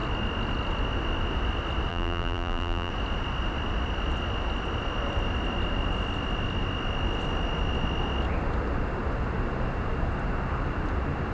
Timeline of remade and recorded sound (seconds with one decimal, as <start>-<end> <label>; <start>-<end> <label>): 0.0-1.9 recorded; 1.9-2.9 remade; 2.9-11.3 recorded